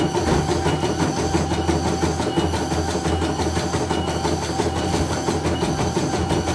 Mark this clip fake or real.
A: real